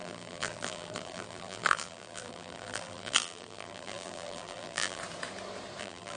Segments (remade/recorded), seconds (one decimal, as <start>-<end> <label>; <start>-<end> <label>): 0.0-5.0 remade; 5.0-5.8 recorded; 5.8-6.2 remade